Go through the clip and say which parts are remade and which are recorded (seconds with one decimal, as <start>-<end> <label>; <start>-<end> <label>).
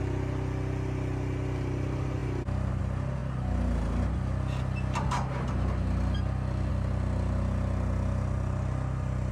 0.0-9.3 recorded